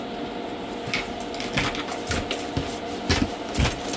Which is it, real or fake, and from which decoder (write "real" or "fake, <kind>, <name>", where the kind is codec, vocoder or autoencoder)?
real